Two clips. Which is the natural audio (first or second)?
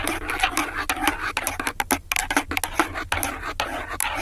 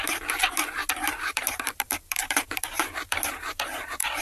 first